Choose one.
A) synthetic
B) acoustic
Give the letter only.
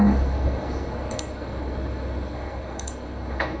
A